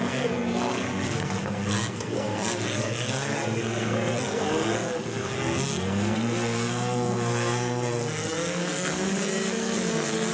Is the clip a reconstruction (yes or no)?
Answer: yes